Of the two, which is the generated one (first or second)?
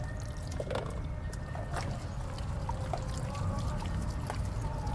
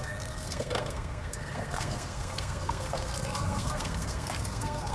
second